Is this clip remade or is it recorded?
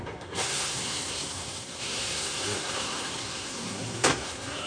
remade